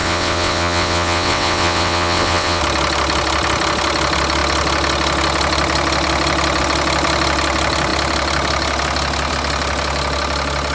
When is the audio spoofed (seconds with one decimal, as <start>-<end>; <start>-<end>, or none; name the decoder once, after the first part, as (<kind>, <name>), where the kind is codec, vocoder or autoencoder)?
0.0-2.6 (vocoder, WaveNeXt)